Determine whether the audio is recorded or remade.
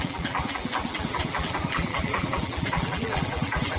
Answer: remade